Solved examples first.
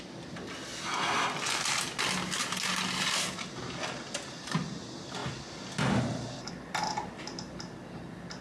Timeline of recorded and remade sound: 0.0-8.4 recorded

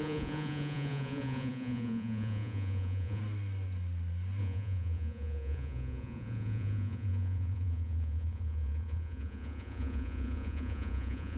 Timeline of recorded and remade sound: 0.0-3.2 remade; 3.2-4.4 recorded; 4.4-11.4 remade

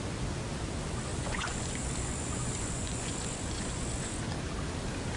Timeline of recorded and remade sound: 0.0-1.1 recorded; 1.1-4.2 remade; 4.2-5.2 recorded

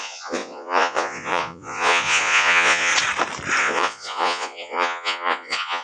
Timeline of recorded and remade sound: 0.0-2.9 remade; 2.9-3.6 recorded; 3.6-5.8 remade

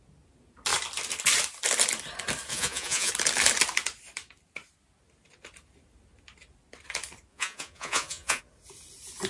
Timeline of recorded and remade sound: 0.0-2.5 recorded; 2.5-3.1 remade; 3.1-7.3 recorded; 7.3-8.4 remade; 8.4-9.3 recorded

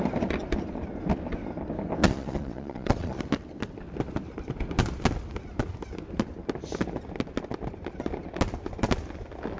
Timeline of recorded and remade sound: 0.0-2.0 recorded; 2.0-3.2 remade; 3.2-9.6 recorded

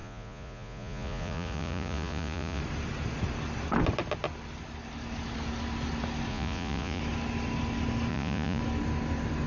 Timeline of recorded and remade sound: 0.0-2.6 remade; 2.6-6.3 recorded; 6.3-7.0 remade; 7.0-8.1 recorded; 8.1-8.6 remade; 8.6-9.5 recorded